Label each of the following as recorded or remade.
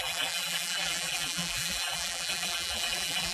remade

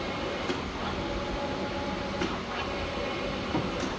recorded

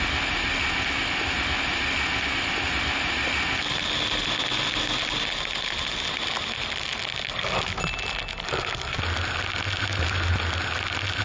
recorded